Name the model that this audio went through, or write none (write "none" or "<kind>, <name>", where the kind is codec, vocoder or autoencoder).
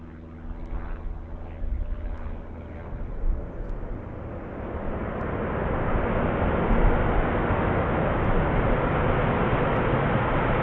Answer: none